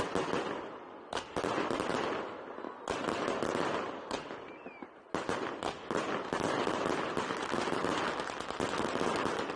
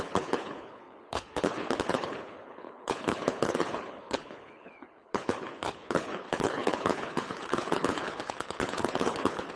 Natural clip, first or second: first